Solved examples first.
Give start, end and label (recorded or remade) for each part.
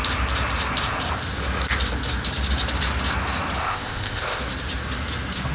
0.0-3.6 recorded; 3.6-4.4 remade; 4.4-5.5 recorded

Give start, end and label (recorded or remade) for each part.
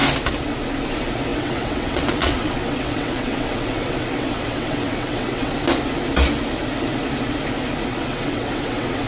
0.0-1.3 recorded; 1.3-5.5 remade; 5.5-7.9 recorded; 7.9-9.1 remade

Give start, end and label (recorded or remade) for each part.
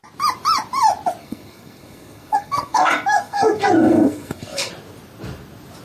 0.0-1.2 recorded; 1.2-4.7 remade; 4.7-5.8 recorded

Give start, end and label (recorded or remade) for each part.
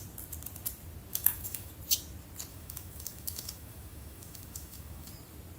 0.0-1.1 recorded; 1.1-1.7 remade; 1.7-2.5 recorded; 2.5-5.1 remade; 5.1-5.6 recorded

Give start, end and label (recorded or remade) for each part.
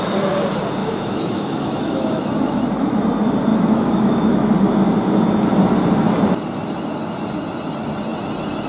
0.0-0.8 recorded; 0.8-2.3 remade; 2.3-3.5 recorded; 3.5-4.5 remade; 4.5-8.7 recorded